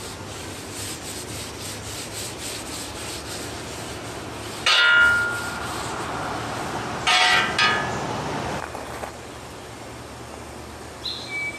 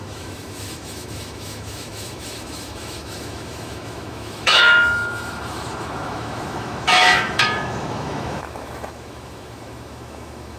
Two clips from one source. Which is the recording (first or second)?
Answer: first